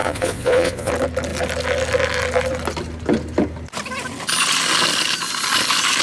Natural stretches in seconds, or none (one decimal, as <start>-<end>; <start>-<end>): 0.9-6.0